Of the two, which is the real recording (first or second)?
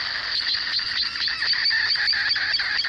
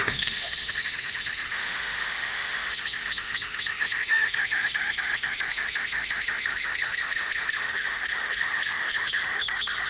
first